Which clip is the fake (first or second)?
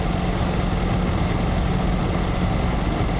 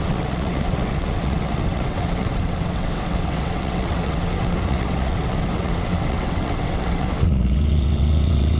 second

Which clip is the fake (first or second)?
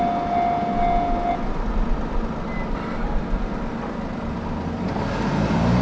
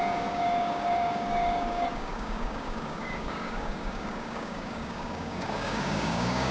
second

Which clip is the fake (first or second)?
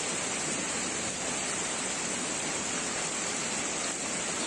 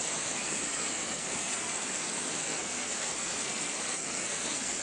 second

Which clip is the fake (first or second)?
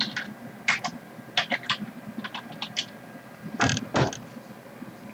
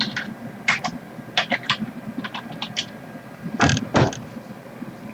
second